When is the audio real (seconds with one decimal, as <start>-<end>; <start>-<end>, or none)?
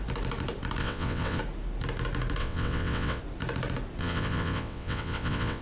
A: 0.0-0.8; 1.4-2.4; 3.2-4.0